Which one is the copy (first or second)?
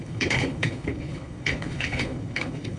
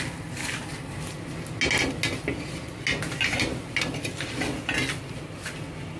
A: first